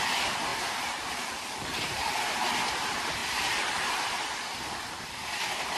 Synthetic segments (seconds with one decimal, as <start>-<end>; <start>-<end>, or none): 0.0-0.5; 1.1-2.0; 2.7-5.8